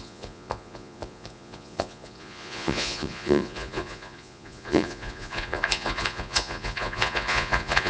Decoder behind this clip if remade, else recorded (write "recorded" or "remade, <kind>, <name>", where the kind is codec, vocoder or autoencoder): remade, vocoder, Vocos